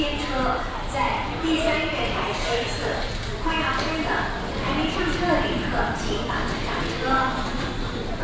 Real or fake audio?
real